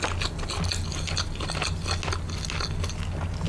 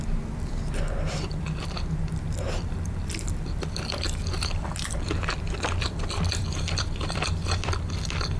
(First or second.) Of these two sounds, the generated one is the second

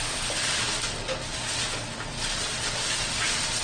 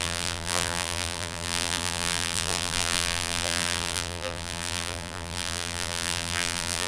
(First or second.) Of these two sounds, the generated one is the second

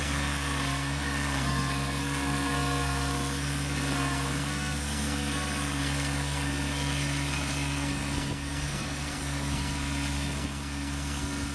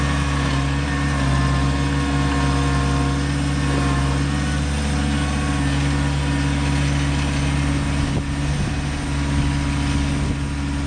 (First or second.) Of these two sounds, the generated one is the first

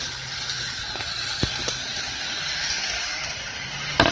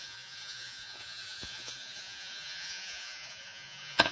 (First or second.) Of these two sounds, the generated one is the second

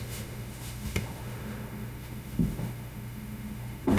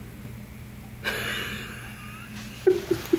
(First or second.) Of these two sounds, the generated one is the first